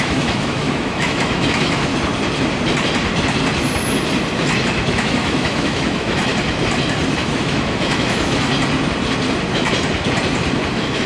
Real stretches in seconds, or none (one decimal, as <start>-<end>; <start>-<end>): 1.9-4.8; 6.3-7.2; 8.5-10.7